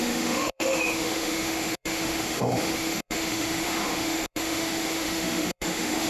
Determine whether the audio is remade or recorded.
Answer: remade